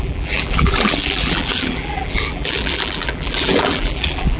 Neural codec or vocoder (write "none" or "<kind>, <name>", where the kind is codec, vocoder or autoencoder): vocoder, BigVGAN v2